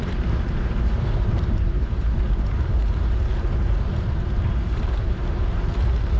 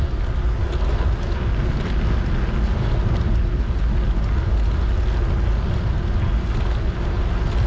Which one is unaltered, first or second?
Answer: second